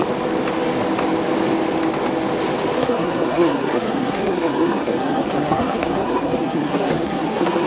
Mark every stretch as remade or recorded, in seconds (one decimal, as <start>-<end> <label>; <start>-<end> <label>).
0.0-2.8 recorded; 2.8-7.7 remade